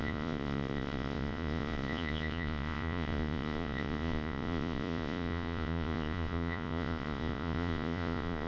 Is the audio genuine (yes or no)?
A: no